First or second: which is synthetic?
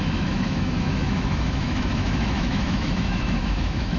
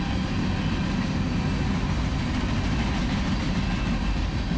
first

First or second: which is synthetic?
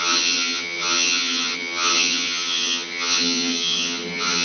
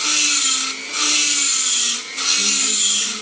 first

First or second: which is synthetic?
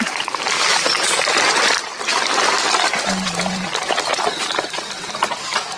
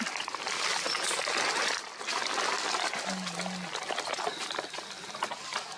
first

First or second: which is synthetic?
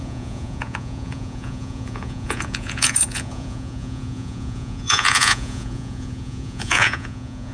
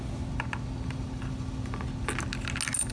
first